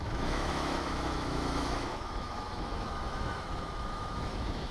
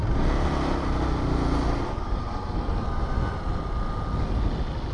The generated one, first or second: first